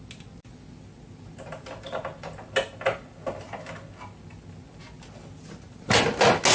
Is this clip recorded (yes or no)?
yes